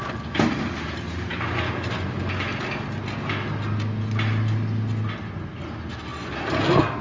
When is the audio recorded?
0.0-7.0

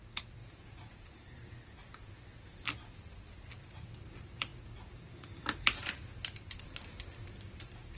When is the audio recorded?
none

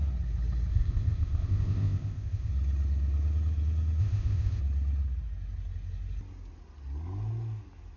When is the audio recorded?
0.0-0.7; 2.5-4.0; 4.6-8.0

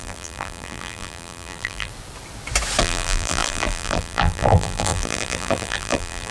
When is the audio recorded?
1.9-2.8

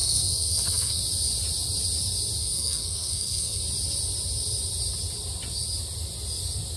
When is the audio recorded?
1.0-2.4; 3.6-6.8

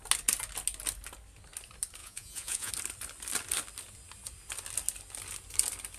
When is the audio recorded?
0.0-2.0; 2.7-6.0

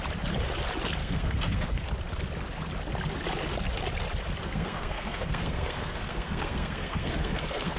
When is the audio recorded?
0.0-1.0; 1.9-4.4

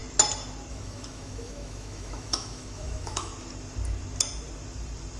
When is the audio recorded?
0.0-0.7; 3.3-5.2